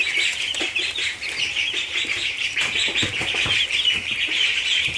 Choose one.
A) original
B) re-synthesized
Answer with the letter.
B